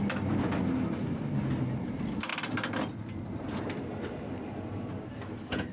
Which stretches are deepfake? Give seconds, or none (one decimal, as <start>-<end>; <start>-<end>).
none